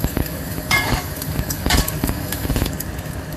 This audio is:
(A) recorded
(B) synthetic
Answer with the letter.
B